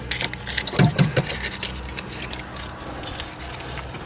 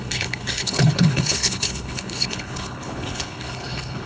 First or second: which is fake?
second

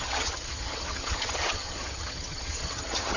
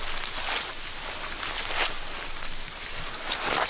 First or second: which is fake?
first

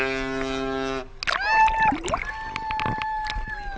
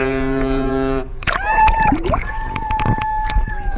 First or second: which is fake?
second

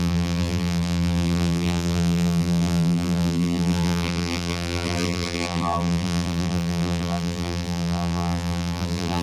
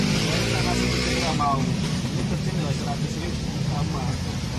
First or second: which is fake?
first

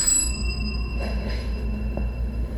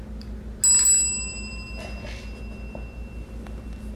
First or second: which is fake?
first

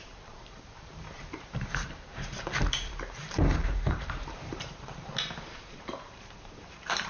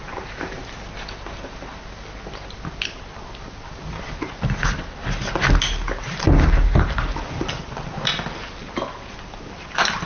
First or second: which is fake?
first